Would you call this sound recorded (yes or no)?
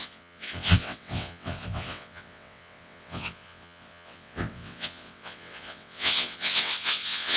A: no